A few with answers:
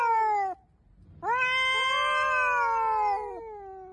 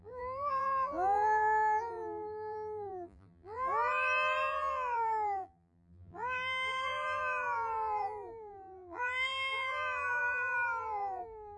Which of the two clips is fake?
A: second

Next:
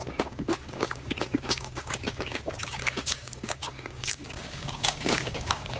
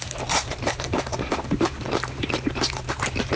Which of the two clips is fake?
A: first